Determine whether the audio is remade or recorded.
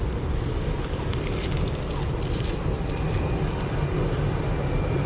remade